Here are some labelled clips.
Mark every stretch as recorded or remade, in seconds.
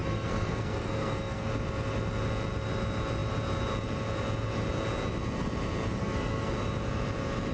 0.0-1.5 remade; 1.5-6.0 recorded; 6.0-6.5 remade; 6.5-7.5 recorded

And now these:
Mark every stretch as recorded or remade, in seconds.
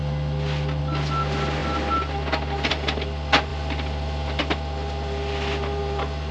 0.0-6.3 recorded